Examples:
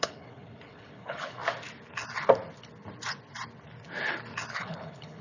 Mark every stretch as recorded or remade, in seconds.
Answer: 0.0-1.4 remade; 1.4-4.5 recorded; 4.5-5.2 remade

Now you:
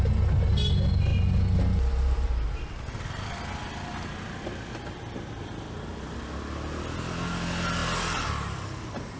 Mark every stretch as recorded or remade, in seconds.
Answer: 0.0-9.2 recorded

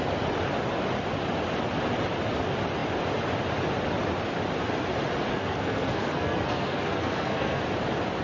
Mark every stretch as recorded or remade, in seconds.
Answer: 0.0-5.3 recorded; 5.3-7.6 remade; 7.6-8.2 recorded

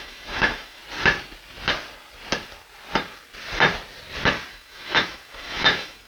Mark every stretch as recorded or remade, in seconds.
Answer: 0.0-0.8 remade; 0.8-4.5 recorded; 4.5-6.1 remade